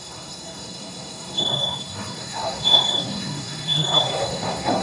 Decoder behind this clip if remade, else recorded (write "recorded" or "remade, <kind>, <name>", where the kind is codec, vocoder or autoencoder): remade, codec, SNAC